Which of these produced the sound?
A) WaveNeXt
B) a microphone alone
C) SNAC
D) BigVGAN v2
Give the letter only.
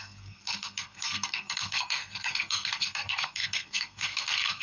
C